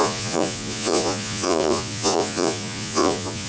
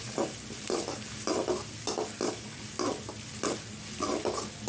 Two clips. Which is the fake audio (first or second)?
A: first